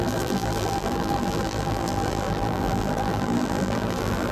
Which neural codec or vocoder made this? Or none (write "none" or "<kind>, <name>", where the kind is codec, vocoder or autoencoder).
vocoder, BigVGAN v2